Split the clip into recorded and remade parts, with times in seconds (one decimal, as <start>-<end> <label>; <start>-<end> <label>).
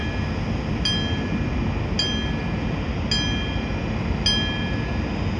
0.0-5.4 recorded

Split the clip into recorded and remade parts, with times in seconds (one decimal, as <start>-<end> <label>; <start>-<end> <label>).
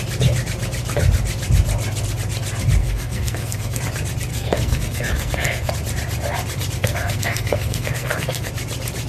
0.0-2.8 recorded; 2.8-3.8 remade; 3.8-4.3 recorded; 4.3-5.7 remade; 5.7-6.8 recorded; 6.8-8.5 remade; 8.5-9.1 recorded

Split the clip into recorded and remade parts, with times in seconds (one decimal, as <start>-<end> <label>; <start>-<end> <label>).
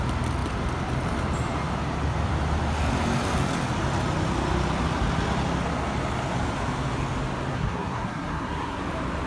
0.0-7.5 recorded; 7.5-8.8 remade; 8.8-9.3 recorded